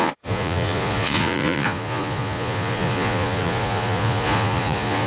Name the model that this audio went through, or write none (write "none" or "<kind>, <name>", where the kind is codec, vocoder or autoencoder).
vocoder, Vocos